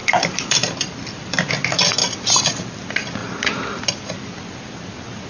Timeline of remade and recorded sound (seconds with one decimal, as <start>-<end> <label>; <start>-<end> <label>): 0.0-1.5 remade; 1.5-2.0 recorded; 2.0-2.8 remade; 2.8-3.2 recorded; 3.2-3.8 remade; 3.8-5.3 recorded